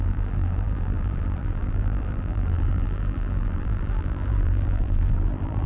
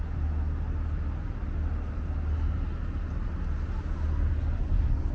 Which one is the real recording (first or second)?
second